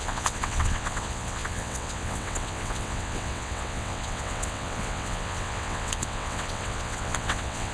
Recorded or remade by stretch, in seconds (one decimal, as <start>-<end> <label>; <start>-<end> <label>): 0.0-7.7 remade